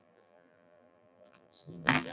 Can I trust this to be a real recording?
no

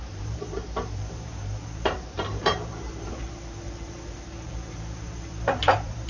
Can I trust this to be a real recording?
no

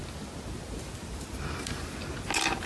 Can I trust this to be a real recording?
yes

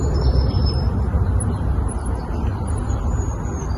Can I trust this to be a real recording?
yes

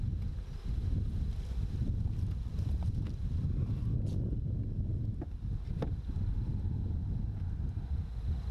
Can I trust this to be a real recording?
yes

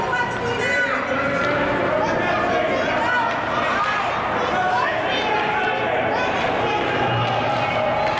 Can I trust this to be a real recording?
yes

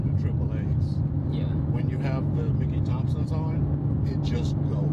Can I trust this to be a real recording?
no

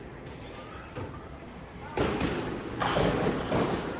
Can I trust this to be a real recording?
no